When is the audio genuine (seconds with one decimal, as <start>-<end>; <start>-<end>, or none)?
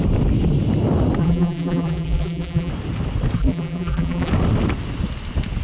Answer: 0.0-1.2; 2.7-3.4; 4.3-5.6